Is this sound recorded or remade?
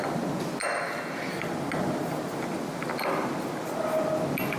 recorded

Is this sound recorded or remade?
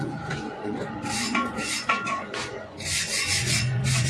remade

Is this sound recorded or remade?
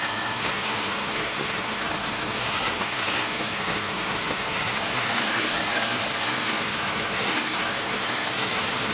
remade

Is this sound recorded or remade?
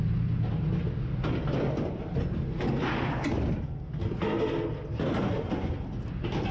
recorded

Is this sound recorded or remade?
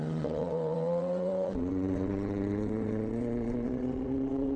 remade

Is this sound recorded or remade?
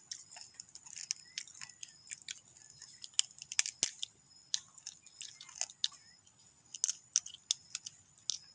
recorded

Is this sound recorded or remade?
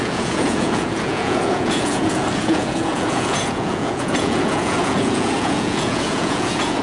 remade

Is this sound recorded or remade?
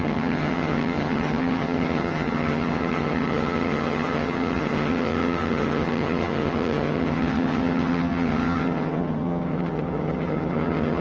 remade